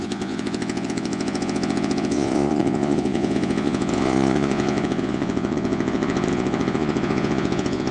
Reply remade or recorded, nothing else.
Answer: remade